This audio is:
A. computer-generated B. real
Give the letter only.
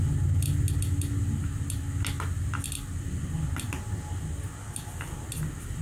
B